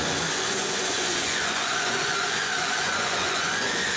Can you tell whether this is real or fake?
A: fake